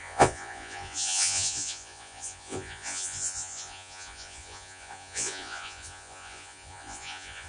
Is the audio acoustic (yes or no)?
no